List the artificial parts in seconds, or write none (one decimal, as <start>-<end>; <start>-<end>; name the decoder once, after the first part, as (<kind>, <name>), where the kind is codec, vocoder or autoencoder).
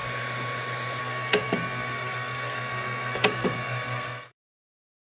1.0-5.1 (codec, SNAC)